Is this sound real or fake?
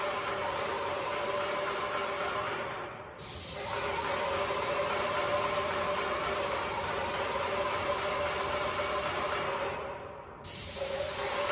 real